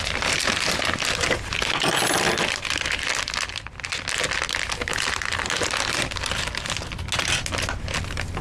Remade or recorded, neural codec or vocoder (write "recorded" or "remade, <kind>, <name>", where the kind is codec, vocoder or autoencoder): recorded